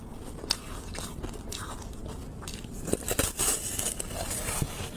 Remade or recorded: recorded